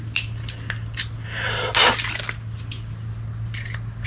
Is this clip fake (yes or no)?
no